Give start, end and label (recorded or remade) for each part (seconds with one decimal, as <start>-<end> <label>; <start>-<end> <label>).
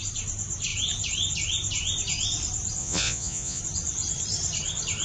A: 0.0-2.8 recorded; 2.8-3.6 remade; 3.6-5.0 recorded